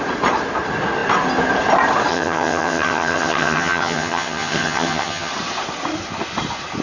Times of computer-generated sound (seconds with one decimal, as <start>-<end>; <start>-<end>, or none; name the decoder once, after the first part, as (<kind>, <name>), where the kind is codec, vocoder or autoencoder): 2.1-5.3 (vocoder, HiFi-GAN)

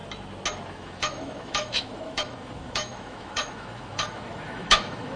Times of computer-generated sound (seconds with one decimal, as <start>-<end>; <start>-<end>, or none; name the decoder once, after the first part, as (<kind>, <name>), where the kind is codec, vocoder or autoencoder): 0.7-5.2 (autoencoder, DAC-VAE)